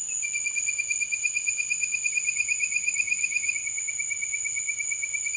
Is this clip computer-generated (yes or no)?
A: no